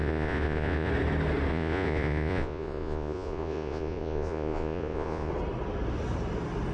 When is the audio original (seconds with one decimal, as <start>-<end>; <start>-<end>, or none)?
0.9-1.5; 5.3-6.7